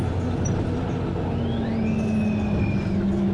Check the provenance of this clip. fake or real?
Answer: real